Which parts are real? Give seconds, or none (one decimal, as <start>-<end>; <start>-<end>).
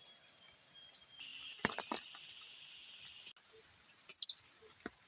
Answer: 0.0-5.1